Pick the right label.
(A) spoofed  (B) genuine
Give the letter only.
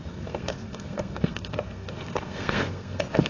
A